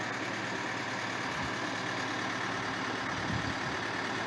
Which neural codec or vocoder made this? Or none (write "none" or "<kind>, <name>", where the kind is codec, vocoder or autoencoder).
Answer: none